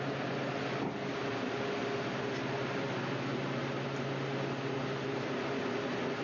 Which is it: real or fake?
real